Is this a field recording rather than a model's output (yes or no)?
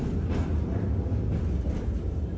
yes